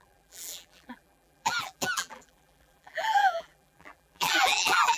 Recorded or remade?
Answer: remade